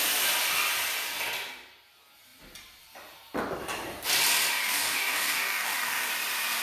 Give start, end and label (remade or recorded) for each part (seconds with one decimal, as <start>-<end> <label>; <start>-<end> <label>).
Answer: 0.0-4.6 recorded; 4.6-6.1 remade; 6.1-6.6 recorded